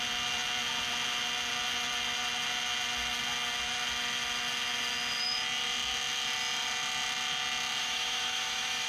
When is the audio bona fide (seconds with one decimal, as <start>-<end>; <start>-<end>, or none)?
0.0-7.8